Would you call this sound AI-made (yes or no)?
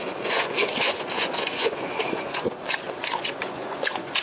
yes